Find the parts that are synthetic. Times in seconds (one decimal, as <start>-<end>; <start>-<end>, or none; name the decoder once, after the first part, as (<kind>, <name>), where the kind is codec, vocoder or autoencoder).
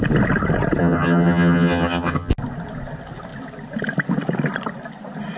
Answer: 0.8-2.3 (vocoder, HiFi-GAN)